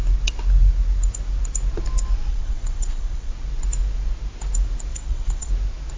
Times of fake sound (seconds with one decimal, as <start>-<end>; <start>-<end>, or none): 2.3-3.3; 4.9-5.5